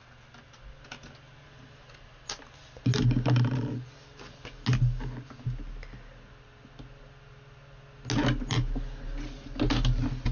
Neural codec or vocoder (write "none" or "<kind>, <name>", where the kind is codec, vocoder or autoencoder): none